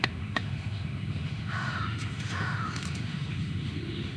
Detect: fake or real fake